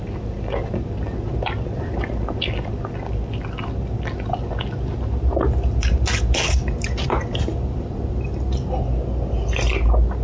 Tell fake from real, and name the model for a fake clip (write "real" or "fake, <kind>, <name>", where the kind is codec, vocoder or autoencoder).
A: real